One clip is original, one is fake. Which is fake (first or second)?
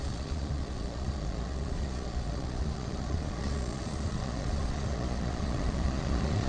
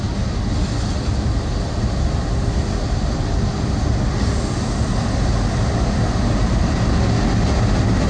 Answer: first